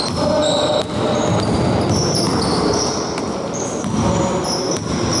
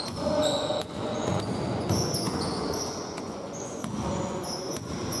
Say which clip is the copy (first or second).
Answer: second